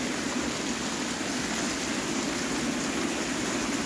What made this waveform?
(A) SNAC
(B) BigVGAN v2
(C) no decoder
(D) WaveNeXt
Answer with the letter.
C